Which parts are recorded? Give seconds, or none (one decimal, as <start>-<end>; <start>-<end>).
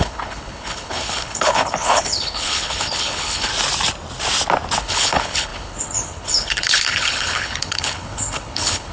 3.5-4.8